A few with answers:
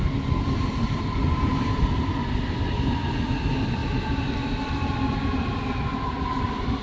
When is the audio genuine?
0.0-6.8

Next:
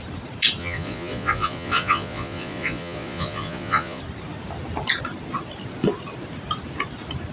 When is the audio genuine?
0.0-0.6; 4.0-7.3